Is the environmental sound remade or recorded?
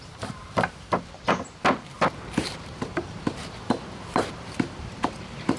remade